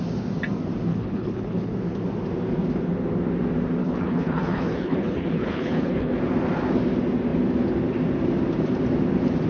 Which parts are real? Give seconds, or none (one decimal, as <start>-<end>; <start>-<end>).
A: 0.0-0.9; 1.7-3.8; 6.2-9.5